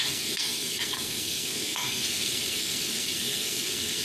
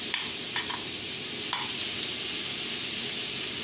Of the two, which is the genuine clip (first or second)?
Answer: second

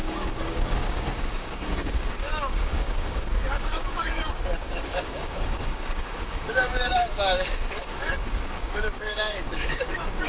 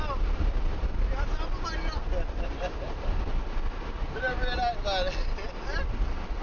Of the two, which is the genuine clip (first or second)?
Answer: second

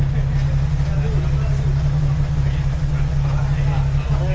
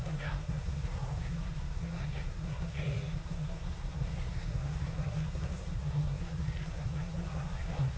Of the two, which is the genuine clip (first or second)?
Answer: first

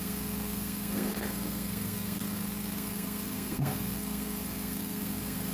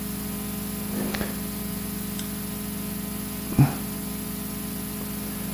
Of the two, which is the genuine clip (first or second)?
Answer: second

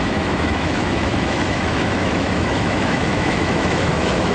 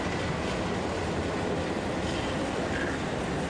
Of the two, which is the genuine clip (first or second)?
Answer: second